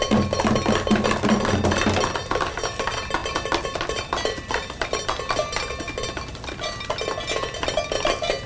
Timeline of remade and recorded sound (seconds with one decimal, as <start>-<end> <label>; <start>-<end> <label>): 0.0-8.5 recorded